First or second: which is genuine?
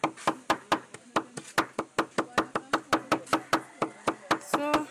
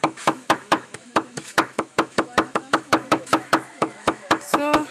first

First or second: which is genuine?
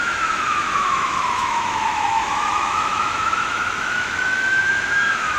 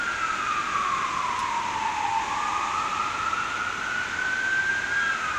second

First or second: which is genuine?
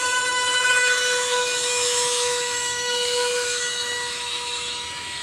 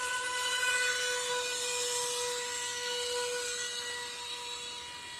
second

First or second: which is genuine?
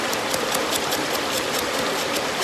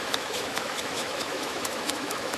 first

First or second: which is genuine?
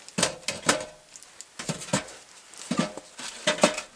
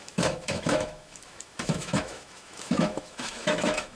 first